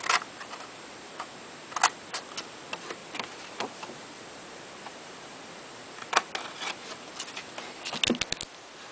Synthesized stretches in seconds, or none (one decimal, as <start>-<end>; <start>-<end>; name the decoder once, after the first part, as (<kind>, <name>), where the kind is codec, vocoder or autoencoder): 3.0-6.3 (vocoder, BigVGAN v2)